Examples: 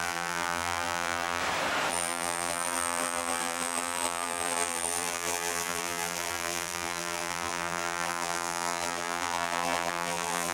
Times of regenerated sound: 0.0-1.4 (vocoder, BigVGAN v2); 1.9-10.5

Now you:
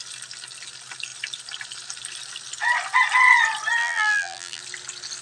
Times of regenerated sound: 3.8-4.6 (vocoder, BigVGAN v2)

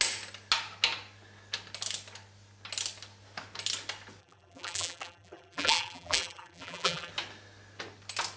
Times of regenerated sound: 4.2-7.1 (vocoder, BigVGAN v2)

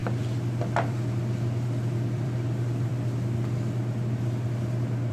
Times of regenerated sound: 0.9-2.9 (vocoder, BigVGAN v2)

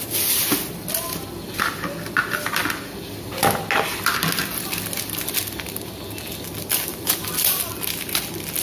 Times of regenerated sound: 6.9-7.7 (vocoder, BigVGAN v2)

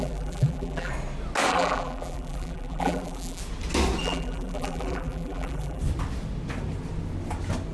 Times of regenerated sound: 0.0-0.9 (vocoder, BigVGAN v2); 1.5-3.4; 4.0-5.8